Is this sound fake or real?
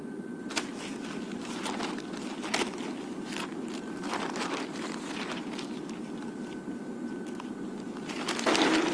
real